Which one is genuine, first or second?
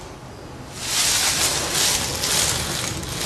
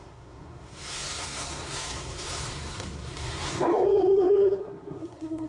first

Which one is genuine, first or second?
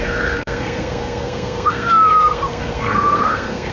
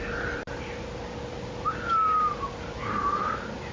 second